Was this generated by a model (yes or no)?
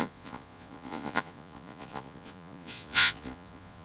yes